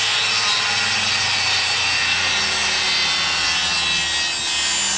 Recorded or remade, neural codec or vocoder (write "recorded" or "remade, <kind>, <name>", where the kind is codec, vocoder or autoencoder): recorded